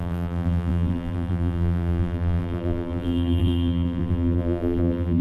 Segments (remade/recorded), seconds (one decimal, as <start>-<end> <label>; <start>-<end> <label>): 0.0-5.2 remade

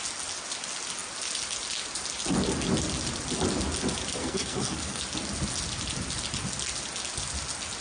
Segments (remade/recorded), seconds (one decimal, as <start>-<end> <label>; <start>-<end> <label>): 0.0-4.2 recorded; 4.2-5.0 remade; 5.0-7.8 recorded

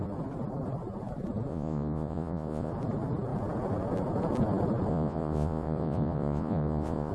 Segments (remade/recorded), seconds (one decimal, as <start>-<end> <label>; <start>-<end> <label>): 0.0-1.5 recorded; 1.5-2.7 remade; 2.7-4.9 recorded; 4.9-7.1 remade

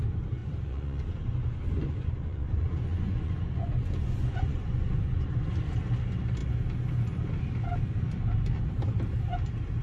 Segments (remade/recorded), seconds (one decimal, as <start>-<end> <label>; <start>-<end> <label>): 0.0-0.4 recorded; 0.4-5.5 remade; 5.5-9.8 recorded